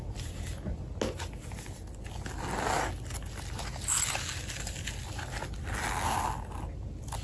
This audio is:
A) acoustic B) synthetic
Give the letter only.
A